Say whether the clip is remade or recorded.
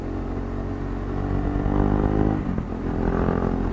recorded